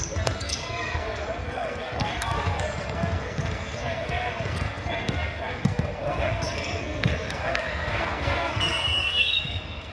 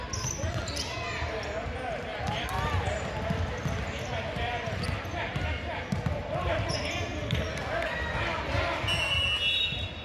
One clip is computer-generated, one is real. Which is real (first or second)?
second